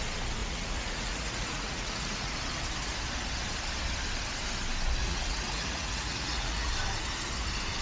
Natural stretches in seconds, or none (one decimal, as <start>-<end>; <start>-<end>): 0.0-0.4; 2.3-5.0; 6.7-7.8